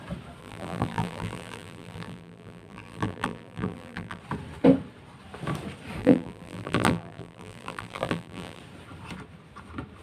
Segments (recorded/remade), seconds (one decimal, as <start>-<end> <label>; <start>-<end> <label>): 0.0-0.4 recorded; 0.4-4.2 remade; 4.2-6.0 recorded; 6.0-8.6 remade; 8.6-10.0 recorded

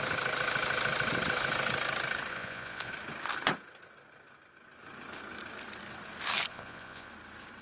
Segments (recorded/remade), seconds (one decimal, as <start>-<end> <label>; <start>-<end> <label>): 0.0-2.3 recorded; 2.3-2.9 remade; 2.9-6.5 recorded; 6.5-7.1 remade; 7.1-7.6 recorded

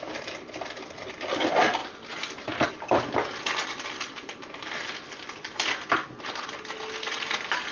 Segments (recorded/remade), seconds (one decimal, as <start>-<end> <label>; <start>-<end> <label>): 0.0-7.7 recorded

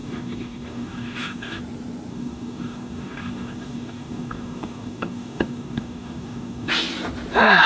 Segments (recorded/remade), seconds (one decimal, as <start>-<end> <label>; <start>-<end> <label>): 0.0-1.6 remade; 1.6-2.1 recorded; 2.1-6.7 remade; 6.7-7.7 recorded

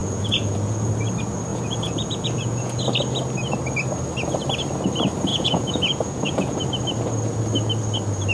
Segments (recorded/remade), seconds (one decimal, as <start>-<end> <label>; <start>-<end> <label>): 0.0-0.9 remade; 0.9-1.5 recorded; 1.5-2.8 remade; 2.8-5.3 recorded; 5.3-6.6 remade; 6.6-8.3 recorded

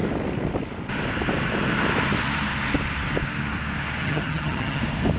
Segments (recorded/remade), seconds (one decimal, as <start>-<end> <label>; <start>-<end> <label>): 0.0-4.0 recorded; 4.0-4.8 remade; 4.8-5.2 recorded